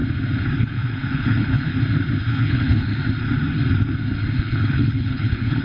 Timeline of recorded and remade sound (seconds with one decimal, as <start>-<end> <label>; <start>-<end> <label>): 0.0-0.6 recorded; 0.6-1.7 remade; 1.7-2.3 recorded; 2.3-2.9 remade; 2.9-4.4 recorded; 4.4-5.6 remade